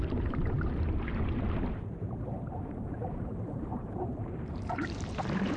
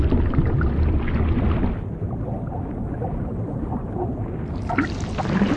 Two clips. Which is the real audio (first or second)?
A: second